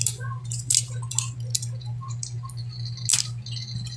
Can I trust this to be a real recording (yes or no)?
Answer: yes